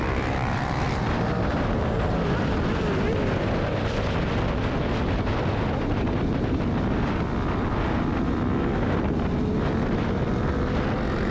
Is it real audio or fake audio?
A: real